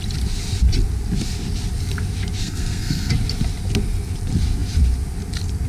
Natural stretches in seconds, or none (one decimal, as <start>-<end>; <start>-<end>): 0.0-2.4; 3.1-5.7

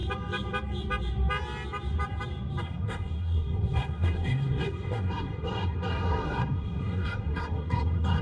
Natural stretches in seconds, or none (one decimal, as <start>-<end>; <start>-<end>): 0.0-2.6

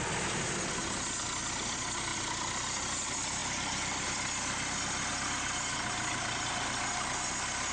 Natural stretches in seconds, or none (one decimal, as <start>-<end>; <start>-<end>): 0.0-7.7

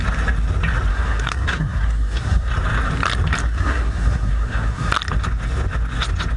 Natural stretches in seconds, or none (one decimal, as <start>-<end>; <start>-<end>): 0.0-0.9; 2.5-3.4; 4.9-6.4

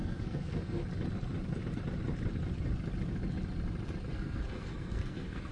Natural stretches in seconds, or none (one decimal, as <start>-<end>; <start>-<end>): 0.8-4.1

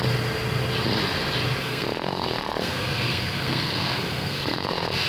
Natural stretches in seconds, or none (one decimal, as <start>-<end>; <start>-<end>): 0.0-1.6